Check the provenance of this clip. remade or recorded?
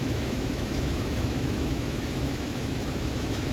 remade